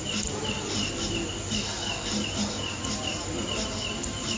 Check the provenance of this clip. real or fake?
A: real